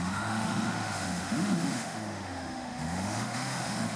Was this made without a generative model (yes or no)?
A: no